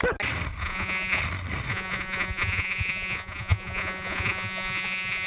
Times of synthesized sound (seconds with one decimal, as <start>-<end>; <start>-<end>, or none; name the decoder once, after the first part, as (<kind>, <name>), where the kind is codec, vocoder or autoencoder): 0.6-1.2 (vocoder, Vocos); 1.7-5.3